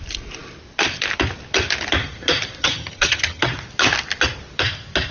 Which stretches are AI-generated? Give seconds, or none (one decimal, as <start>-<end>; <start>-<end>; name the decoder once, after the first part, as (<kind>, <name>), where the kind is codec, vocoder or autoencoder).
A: 2.6-3.5 (vocoder, HiFi-GAN)